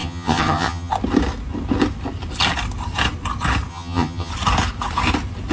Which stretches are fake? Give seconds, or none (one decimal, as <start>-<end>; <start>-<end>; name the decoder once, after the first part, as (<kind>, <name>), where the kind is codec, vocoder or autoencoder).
0.0-0.9 (vocoder, HiFi-GAN); 3.7-4.3